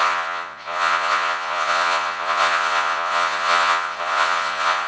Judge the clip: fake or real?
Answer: fake